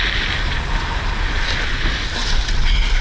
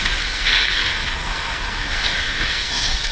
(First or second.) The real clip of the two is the first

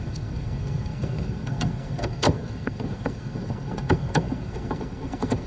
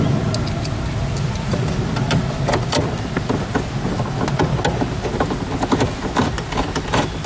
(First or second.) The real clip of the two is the second